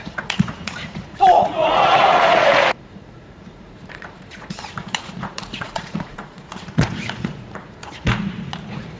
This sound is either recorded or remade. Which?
remade